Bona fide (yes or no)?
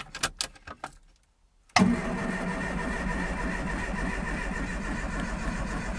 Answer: yes